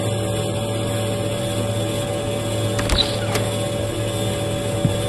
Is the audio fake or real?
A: real